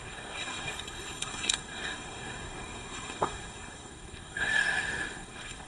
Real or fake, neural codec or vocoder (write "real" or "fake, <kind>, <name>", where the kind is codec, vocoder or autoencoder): fake, codec, SNAC